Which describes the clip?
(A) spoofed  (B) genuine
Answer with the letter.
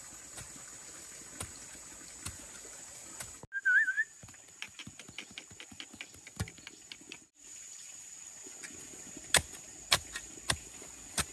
B